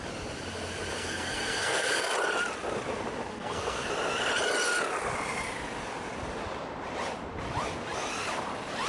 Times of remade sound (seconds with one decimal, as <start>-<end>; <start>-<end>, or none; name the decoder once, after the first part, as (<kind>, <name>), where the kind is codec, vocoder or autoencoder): 0.9-2.1 (codec, SNAC); 3.3-3.9